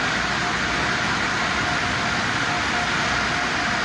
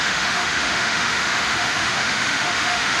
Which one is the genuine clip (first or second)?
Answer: first